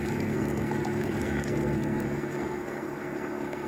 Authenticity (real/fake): fake